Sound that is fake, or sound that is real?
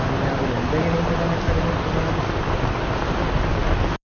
real